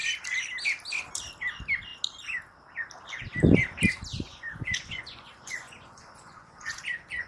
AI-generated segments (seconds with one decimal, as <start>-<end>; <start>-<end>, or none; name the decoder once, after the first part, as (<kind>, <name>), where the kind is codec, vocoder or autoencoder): 4.1-7.3 (vocoder, Vocos)